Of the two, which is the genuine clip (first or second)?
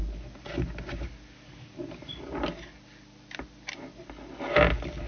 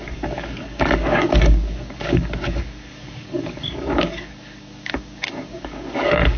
first